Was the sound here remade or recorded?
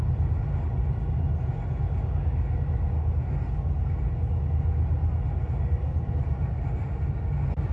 recorded